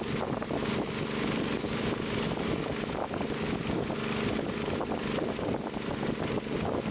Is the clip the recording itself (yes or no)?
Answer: yes